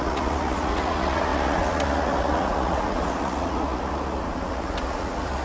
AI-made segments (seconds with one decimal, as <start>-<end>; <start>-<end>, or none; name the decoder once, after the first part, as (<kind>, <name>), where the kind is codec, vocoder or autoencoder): 0.0-5.4 (vocoder, Vocos)